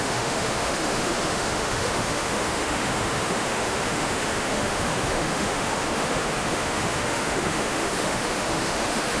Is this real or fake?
fake